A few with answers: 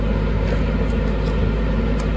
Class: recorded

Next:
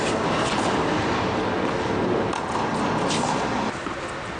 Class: recorded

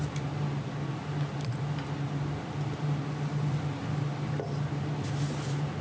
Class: recorded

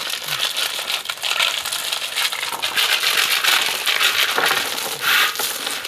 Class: recorded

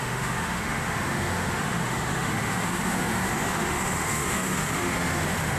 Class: remade